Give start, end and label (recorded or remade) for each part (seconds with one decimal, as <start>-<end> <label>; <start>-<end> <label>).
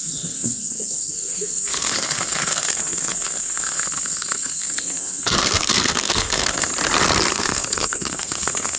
0.0-6.7 remade; 6.7-7.3 recorded; 7.3-8.8 remade